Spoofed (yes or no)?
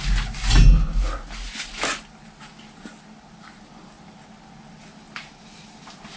no